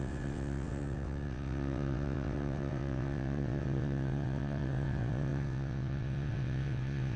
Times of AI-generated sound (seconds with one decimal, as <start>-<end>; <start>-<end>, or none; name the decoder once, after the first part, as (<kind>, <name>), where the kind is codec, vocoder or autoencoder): 0.0-7.2 (vocoder, WaveNeXt)